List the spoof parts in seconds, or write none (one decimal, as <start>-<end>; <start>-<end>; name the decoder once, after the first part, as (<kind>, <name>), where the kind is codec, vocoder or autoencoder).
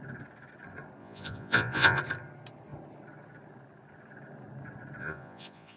1.0-2.0 (vocoder, Vocos); 5.0-5.8